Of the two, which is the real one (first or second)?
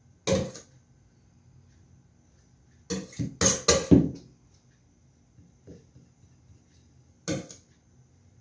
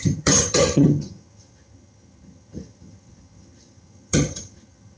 first